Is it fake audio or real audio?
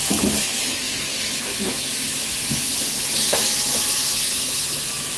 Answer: fake